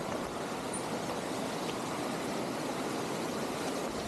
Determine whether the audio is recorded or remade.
recorded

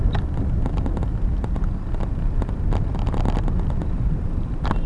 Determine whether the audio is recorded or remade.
recorded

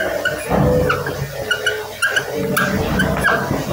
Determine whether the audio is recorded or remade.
recorded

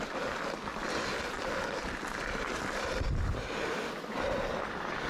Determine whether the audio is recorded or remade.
recorded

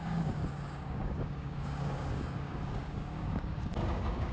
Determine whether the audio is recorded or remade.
remade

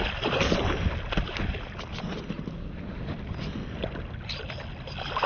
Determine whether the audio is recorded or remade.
recorded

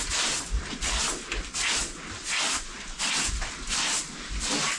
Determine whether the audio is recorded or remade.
recorded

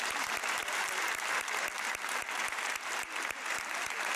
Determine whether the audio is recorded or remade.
recorded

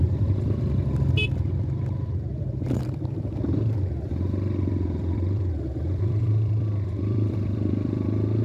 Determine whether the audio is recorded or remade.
remade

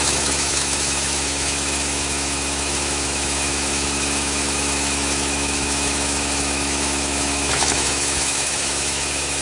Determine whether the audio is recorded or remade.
remade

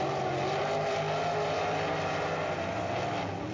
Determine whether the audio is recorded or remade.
recorded